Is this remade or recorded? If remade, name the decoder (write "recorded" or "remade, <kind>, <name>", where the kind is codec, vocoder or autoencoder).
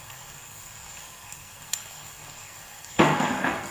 remade, codec, SNAC